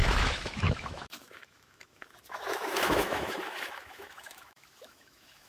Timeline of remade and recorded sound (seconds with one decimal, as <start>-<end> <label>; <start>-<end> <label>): 0.0-5.5 remade